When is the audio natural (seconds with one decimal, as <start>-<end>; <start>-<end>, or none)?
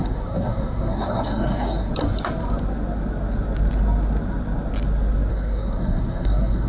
1.9-5.3